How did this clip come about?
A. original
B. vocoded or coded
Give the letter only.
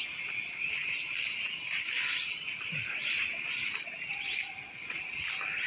A